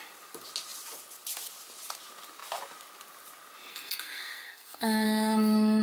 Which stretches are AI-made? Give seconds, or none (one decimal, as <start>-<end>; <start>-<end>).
3.7-5.8